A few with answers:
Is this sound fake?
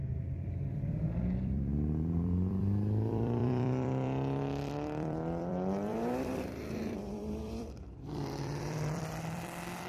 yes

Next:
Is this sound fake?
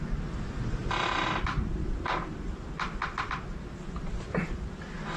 no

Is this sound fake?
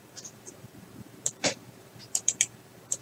yes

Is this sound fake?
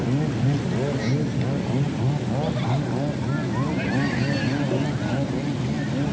no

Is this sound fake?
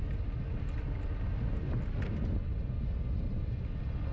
no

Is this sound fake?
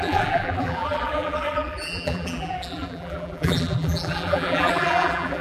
yes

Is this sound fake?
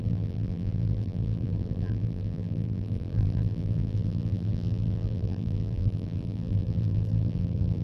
yes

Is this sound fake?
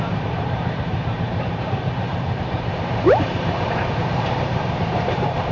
yes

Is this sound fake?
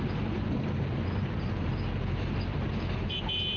no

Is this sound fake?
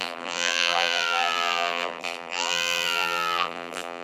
yes